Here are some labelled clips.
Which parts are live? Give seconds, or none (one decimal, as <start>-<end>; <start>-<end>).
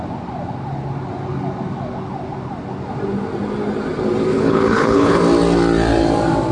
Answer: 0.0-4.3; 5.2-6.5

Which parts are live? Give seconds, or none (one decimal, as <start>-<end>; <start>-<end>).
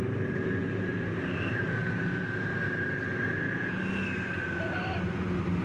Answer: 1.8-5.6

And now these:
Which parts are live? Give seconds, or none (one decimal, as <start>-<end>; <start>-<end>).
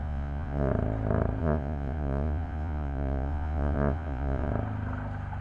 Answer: 0.7-1.4; 4.5-5.4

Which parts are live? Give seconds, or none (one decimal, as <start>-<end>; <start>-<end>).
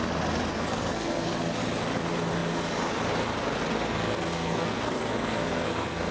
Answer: 0.0-0.5; 1.3-3.7